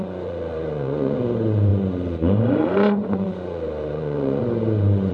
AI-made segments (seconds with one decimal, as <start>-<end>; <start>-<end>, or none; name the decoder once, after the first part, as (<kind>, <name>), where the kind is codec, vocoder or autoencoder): 0.0-5.1 (vocoder, Vocos)